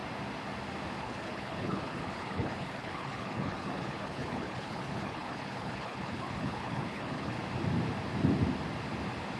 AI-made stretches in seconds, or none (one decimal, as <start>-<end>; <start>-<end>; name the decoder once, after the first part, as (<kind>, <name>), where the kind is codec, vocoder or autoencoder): 1.0-7.4 (codec, HILCodec)